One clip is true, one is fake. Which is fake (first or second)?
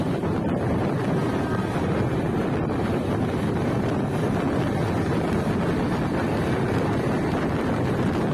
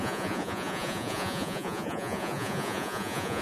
second